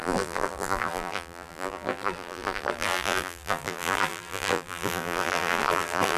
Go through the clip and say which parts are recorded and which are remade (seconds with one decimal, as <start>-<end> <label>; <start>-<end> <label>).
0.0-6.2 remade